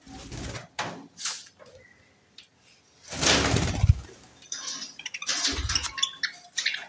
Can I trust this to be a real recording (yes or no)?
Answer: yes